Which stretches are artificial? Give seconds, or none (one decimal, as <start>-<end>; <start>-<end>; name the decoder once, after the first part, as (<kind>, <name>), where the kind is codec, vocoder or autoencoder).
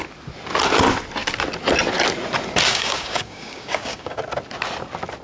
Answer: 2.7-4.2 (codec, DAC)